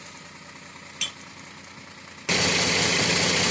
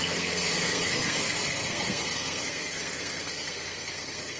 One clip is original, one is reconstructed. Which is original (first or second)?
first